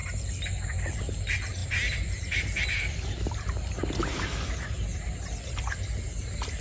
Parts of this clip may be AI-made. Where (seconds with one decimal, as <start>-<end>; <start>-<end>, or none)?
none